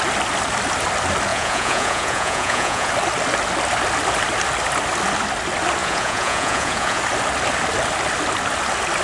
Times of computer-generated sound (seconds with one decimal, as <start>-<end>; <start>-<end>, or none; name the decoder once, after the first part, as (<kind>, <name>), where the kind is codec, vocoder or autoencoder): 1.3-2.9 (vocoder, Vocos); 5.8-7.0